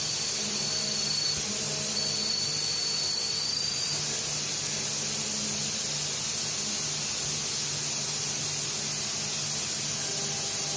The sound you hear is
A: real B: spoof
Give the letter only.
A